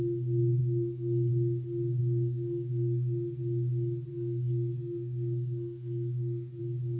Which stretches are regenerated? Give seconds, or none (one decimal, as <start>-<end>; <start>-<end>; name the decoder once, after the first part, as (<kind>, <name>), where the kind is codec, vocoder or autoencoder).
0.6-1.3 (codec, SNAC); 2.0-3.4; 4.1-6.6